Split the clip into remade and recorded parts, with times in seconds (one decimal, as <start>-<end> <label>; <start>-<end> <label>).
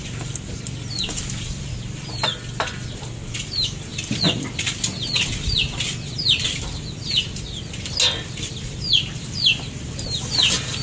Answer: 0.0-10.8 recorded